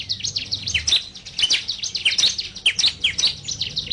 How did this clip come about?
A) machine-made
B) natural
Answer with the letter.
B